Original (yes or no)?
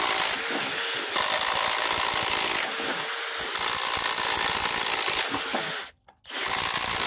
yes